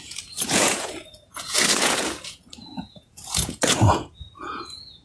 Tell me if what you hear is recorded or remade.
remade